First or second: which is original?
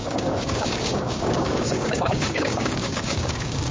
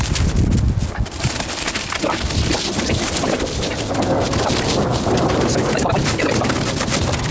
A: second